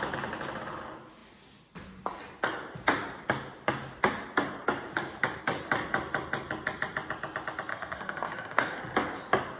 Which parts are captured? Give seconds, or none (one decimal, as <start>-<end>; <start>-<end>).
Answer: 0.0-7.7; 8.8-9.6